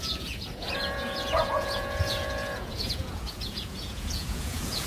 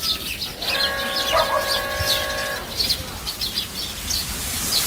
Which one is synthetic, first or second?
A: first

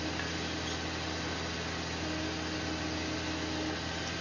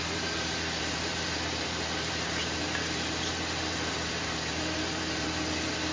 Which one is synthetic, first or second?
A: second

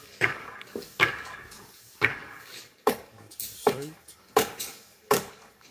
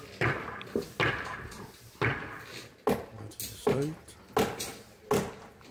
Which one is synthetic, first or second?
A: first